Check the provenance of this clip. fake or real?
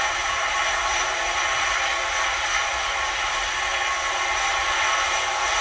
real